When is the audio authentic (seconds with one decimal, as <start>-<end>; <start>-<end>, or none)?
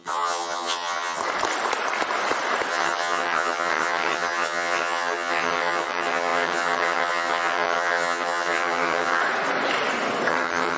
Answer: 1.2-2.7; 9.2-10.3